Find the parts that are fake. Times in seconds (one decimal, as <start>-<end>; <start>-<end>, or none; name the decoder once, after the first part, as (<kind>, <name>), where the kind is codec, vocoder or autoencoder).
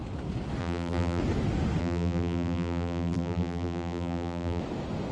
0.6-1.2 (vocoder, BigVGAN v2); 1.8-4.6